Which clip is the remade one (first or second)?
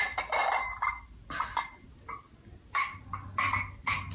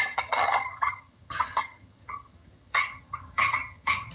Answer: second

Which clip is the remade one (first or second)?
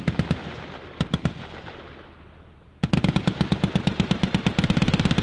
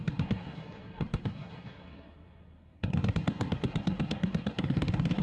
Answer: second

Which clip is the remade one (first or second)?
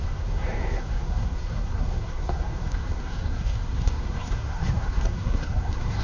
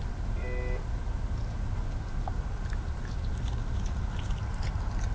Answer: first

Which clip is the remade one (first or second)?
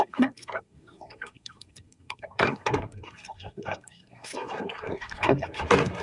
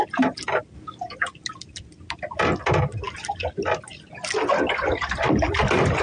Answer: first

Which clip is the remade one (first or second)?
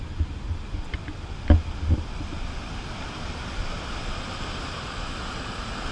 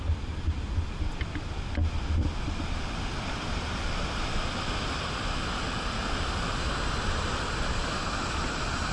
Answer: first